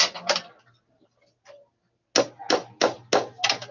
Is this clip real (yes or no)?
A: yes